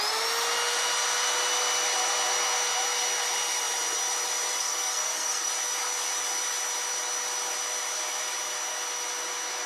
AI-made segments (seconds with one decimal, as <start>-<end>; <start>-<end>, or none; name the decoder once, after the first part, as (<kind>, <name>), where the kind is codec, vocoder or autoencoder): 4.6-5.5 (codec, SNAC)